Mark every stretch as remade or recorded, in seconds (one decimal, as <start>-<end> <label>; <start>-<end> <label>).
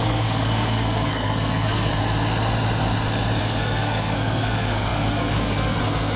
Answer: 0.0-1.9 remade; 1.9-3.4 recorded; 3.4-6.2 remade